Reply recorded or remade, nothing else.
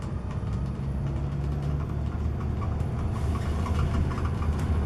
recorded